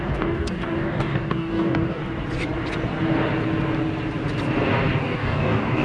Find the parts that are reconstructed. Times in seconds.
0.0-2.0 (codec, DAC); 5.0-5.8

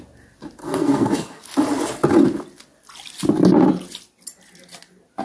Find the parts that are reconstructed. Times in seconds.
0.6-1.4 (codec, SNAC)

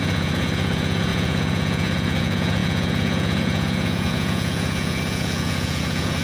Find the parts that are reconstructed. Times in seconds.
0.0-6.2 (vocoder, Vocos)